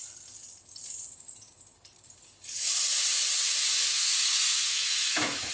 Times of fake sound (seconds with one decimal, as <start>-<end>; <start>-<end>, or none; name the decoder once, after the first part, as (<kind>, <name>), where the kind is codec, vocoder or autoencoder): 3.9-5.5 (autoencoder, DAC-VAE)